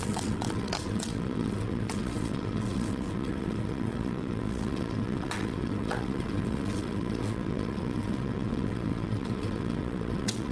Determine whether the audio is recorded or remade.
remade